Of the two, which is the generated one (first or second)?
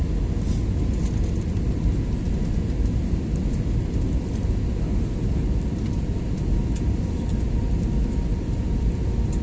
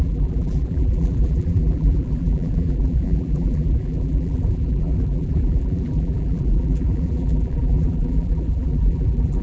second